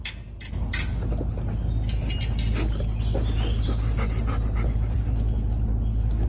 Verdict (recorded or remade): recorded